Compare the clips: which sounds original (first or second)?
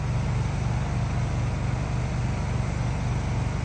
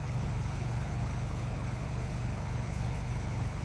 first